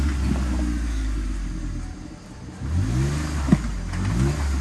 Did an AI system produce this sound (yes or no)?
no